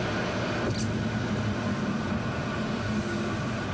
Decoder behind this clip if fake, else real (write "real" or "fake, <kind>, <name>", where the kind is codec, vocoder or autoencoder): real